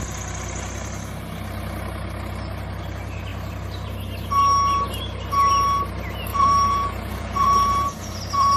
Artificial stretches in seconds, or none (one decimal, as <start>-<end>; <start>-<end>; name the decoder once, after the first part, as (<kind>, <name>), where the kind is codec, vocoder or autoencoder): 6.3-8.2 (vocoder, Vocos)